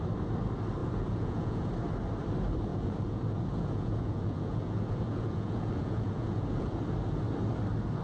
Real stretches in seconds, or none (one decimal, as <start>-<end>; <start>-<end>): 0.0-0.8; 1.7-2.7; 6.8-8.0